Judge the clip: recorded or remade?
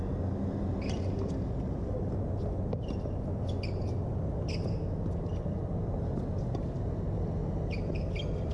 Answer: recorded